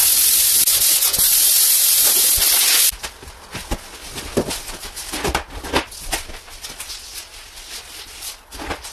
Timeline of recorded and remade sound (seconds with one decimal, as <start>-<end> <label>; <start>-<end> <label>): 0.0-8.9 recorded